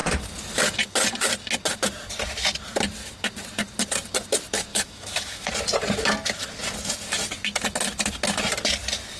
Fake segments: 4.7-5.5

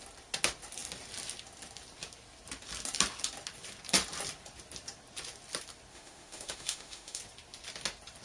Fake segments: 5.9-7.2

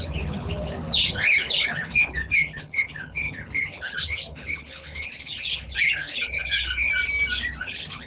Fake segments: 0.0-6.9; 7.6-8.1